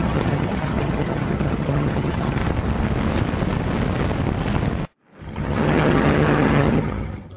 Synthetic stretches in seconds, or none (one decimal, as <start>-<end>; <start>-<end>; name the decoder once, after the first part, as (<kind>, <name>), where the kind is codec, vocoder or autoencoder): 0.0-2.4 (vocoder, HiFi-GAN); 5.2-7.4

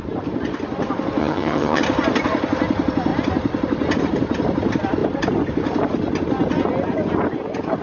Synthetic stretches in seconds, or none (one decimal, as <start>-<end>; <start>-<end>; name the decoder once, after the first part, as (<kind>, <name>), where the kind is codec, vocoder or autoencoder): 1.2-1.8 (vocoder, HiFi-GAN)

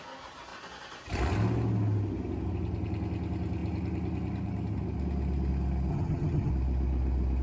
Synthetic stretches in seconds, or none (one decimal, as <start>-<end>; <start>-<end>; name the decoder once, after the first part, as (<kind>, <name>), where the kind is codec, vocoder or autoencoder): 5.9-6.5 (vocoder, HiFi-GAN)

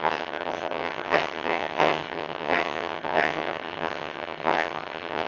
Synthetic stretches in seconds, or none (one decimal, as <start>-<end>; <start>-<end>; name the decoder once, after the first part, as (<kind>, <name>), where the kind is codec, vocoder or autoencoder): 0.0-5.3 (vocoder, HiFi-GAN)

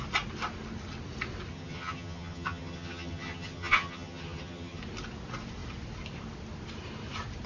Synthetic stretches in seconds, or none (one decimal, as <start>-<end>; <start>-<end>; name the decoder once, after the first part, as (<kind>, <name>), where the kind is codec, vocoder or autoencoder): 1.5-4.8 (vocoder, HiFi-GAN)

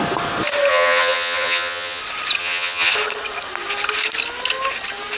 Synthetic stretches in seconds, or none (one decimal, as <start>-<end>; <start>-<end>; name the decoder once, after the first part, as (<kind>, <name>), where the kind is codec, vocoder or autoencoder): 0.7-2.0 (vocoder, HiFi-GAN); 2.4-2.9

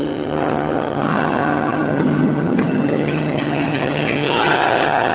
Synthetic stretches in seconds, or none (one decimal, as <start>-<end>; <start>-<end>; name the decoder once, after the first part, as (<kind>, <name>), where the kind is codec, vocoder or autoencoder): 0.0-5.1 (vocoder, HiFi-GAN)

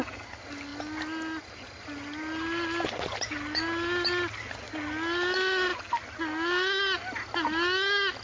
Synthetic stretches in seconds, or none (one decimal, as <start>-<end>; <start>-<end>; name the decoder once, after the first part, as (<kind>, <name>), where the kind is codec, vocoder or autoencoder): none